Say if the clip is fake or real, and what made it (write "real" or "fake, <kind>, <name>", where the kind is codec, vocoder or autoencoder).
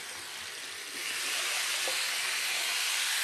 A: real